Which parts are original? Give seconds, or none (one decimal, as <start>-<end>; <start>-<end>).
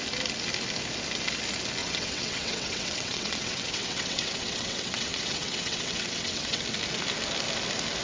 0.0-1.8; 6.6-8.0